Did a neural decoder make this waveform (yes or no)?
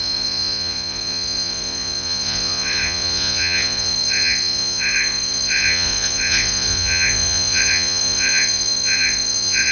yes